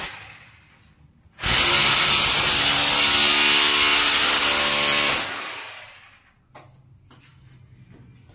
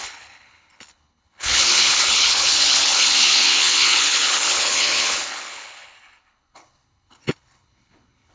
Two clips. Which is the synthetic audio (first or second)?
second